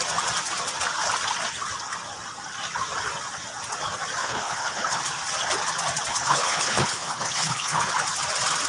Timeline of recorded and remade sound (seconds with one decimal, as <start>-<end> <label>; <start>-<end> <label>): 0.0-4.2 recorded; 4.2-5.0 remade; 5.0-6.1 recorded; 6.1-7.9 remade; 7.9-8.7 recorded